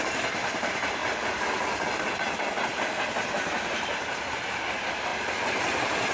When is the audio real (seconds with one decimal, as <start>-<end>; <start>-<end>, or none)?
1.0-2.5; 5.1-6.1